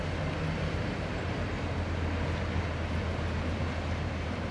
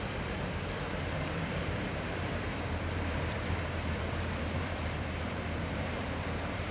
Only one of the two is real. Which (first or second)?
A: first